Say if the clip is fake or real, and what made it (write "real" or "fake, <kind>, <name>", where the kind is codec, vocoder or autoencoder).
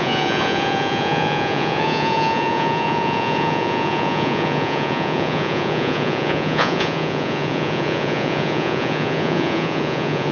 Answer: fake, vocoder, Vocos